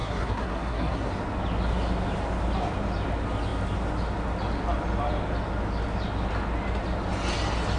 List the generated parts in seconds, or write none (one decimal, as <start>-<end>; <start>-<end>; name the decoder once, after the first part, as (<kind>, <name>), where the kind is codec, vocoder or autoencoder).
0.0-1.1 (codec, SNAC)